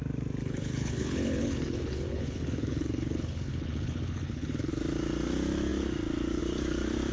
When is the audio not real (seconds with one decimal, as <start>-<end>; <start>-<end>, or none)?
0.4-4.7